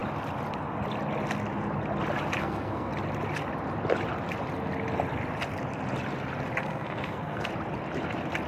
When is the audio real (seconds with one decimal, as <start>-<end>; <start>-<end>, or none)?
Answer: 0.0-2.4; 2.9-6.6; 7.5-8.5